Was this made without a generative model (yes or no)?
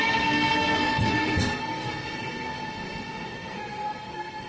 no